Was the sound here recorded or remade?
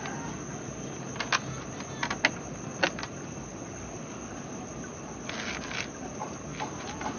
recorded